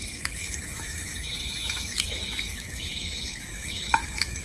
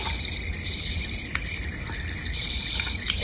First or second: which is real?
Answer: second